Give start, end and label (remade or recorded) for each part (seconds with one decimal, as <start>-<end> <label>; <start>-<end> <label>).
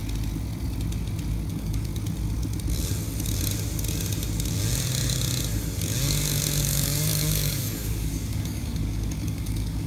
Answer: 0.0-1.5 recorded; 1.5-1.9 remade; 1.9-6.6 recorded; 6.6-9.9 remade